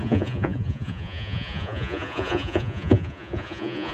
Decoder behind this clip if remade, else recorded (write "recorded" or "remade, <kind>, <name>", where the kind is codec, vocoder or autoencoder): remade, vocoder, Vocos